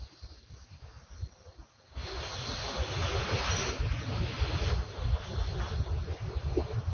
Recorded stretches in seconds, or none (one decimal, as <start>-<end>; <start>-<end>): 0.0-6.9